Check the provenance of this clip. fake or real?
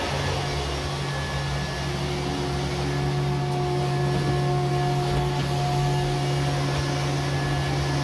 real